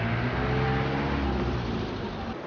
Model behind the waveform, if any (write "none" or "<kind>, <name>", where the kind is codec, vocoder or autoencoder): none